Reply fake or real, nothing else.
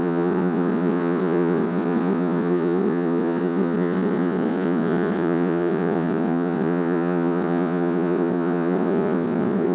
fake